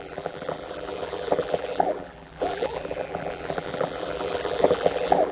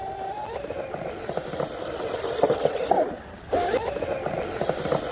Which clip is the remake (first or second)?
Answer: first